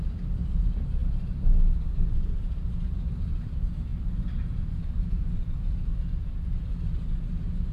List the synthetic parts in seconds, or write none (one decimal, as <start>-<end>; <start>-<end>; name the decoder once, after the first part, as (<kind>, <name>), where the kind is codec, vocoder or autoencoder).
0.0-5.9 (vocoder, BigVGAN v2); 6.6-7.7